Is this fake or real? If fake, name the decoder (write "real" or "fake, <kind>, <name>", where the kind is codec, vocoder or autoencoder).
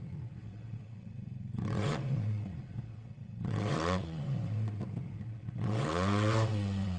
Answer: fake, vocoder, WaveNeXt